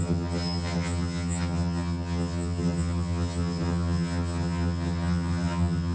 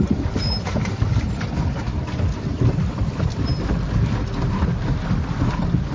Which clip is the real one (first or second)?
second